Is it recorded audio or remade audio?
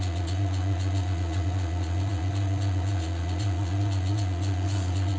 remade